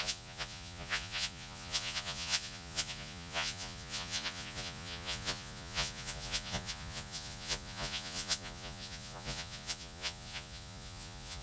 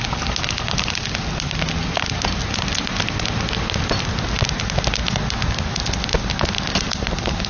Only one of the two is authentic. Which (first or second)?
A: second